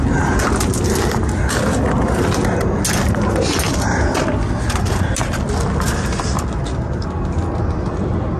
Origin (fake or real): real